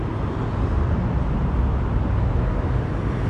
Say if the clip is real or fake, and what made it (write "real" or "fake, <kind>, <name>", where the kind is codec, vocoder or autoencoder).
real